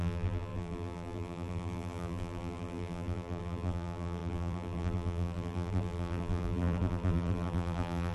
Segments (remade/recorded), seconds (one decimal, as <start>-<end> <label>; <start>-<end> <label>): 0.0-8.1 remade